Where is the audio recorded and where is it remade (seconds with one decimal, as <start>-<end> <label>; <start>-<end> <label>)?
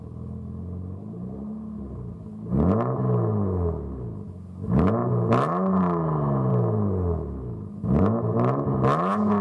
0.0-9.4 recorded